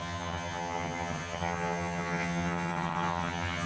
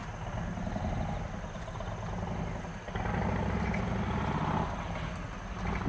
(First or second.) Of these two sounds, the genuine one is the second